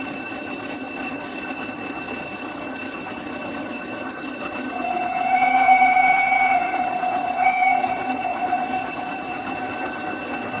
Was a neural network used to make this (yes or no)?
yes